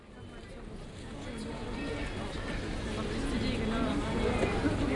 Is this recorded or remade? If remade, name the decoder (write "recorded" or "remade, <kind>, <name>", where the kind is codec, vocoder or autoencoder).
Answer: recorded